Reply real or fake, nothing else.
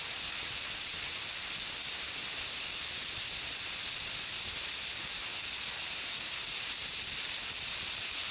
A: real